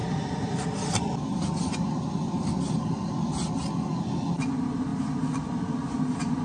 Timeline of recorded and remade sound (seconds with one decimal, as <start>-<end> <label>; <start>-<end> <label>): 0.0-6.4 recorded